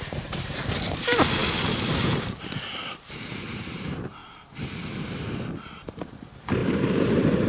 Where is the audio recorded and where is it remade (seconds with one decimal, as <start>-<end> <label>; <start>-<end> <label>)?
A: 0.0-1.4 remade; 1.4-2.4 recorded; 2.4-4.2 remade; 4.2-5.8 recorded; 5.8-7.5 remade